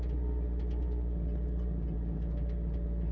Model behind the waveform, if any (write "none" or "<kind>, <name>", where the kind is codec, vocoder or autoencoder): none